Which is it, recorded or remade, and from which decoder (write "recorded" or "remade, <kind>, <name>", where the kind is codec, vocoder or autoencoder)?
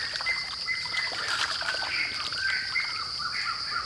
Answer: recorded